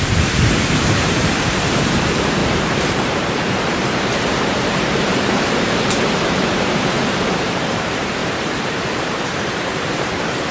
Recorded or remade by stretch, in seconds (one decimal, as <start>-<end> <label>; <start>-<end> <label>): 0.0-10.5 remade

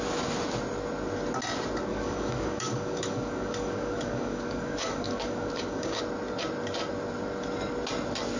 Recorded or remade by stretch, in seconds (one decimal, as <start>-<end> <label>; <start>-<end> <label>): 0.0-1.9 recorded; 1.9-6.0 remade; 6.0-8.4 recorded

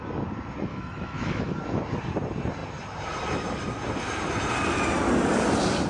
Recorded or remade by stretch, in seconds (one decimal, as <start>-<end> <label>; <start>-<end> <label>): 0.0-0.7 recorded; 0.7-1.5 remade; 1.5-5.9 recorded

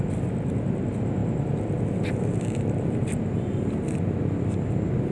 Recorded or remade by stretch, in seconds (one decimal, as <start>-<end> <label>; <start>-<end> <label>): 0.0-5.1 recorded

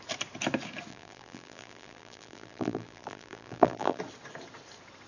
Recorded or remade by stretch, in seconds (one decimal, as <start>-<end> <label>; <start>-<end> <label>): 0.0-0.9 recorded; 0.9-4.0 remade; 4.0-5.1 recorded

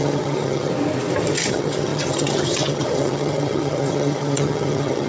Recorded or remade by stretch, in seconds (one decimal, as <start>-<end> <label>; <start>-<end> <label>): 0.0-0.7 remade; 0.7-1.5 recorded; 1.5-5.1 remade

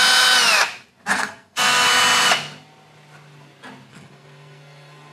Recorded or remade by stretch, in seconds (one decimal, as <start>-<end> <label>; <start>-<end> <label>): 0.0-1.1 recorded; 1.1-1.9 remade; 1.9-3.9 recorded; 3.9-5.1 remade

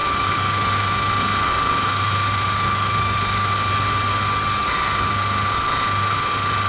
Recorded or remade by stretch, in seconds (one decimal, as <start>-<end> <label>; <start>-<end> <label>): 0.0-3.7 remade; 3.7-4.7 recorded; 4.7-6.7 remade